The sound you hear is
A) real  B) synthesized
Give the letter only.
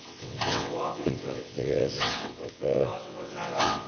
B